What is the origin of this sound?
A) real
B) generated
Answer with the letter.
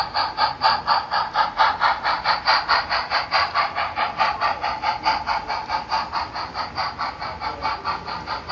A